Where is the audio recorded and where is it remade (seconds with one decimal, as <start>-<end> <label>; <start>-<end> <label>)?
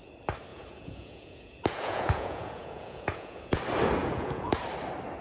0.0-0.5 recorded; 0.5-3.6 remade; 3.6-4.0 recorded; 4.0-4.6 remade; 4.6-5.2 recorded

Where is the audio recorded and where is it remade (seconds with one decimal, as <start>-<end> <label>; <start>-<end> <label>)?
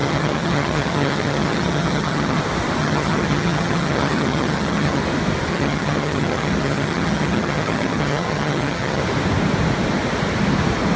0.0-2.4 remade; 2.4-2.8 recorded; 2.8-5.0 remade; 5.0-5.5 recorded; 5.5-9.0 remade; 9.0-11.0 recorded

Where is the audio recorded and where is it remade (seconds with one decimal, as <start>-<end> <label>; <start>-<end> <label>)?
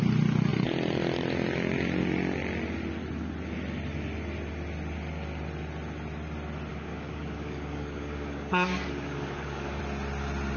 0.0-6.7 recorded; 6.7-9.8 remade; 9.8-10.6 recorded